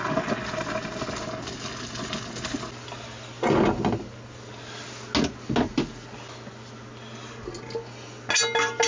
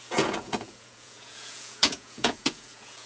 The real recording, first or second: first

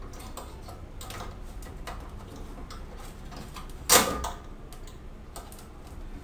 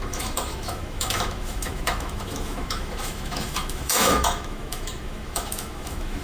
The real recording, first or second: first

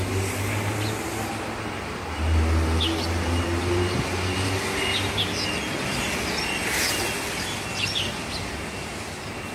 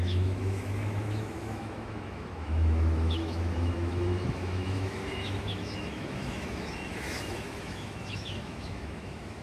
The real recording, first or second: first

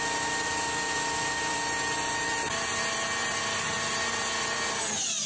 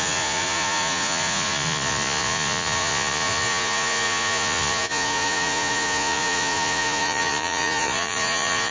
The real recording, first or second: first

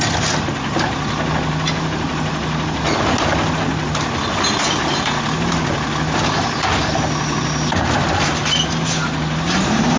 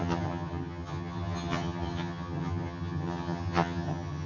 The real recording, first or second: first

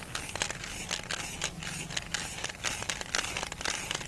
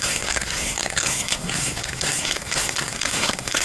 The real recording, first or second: first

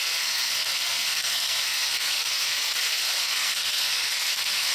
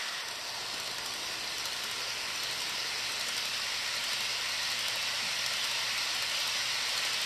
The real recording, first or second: second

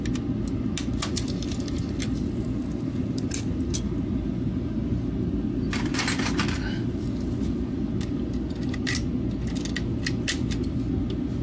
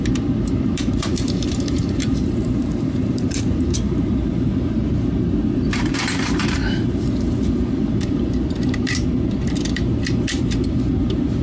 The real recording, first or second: first